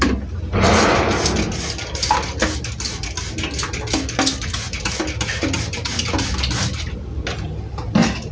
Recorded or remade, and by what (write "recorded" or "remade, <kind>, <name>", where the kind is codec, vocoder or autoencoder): recorded